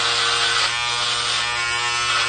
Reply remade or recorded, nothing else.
recorded